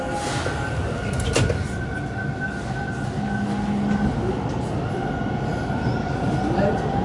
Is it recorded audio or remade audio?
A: recorded